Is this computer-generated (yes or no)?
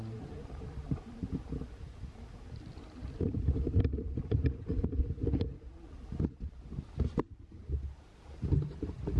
yes